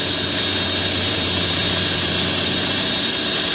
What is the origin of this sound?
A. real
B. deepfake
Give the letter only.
B